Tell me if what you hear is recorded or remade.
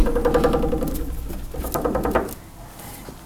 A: recorded